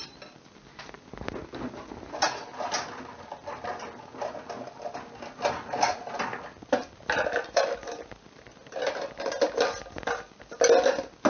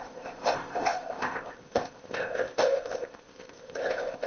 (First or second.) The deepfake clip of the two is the second